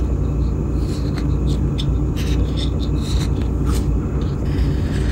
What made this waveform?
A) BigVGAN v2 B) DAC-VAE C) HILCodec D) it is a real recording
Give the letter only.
D